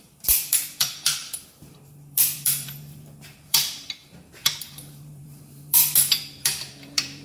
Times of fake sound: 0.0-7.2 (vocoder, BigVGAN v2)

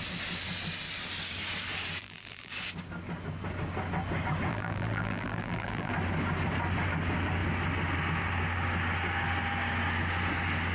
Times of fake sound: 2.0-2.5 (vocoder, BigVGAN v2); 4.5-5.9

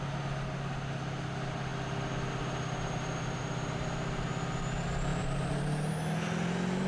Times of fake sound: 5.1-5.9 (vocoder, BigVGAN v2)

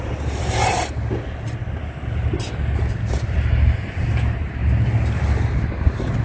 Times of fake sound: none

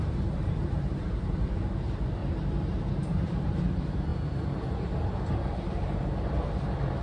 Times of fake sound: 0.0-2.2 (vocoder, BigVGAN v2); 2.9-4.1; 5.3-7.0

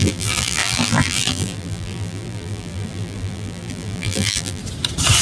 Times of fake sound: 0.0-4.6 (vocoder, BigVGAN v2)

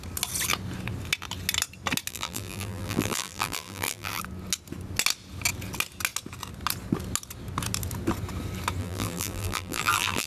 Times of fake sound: 2.1-4.2 (vocoder, BigVGAN v2); 8.8-10.3

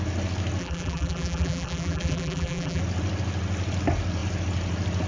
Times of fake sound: 0.6-2.8 (vocoder, BigVGAN v2)